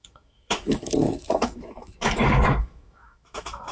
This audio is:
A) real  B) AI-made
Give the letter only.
B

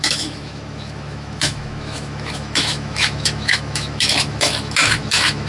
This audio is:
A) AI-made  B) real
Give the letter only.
A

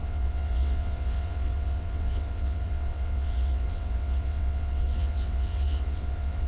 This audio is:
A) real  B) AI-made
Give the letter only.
B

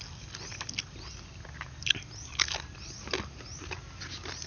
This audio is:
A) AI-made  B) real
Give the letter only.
B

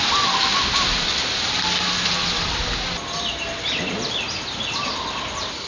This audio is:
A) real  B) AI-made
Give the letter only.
A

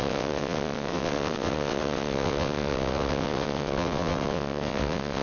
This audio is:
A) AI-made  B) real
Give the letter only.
A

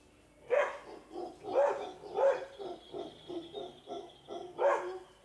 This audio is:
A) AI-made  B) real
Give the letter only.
B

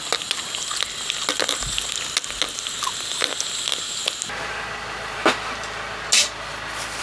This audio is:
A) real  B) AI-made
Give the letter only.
A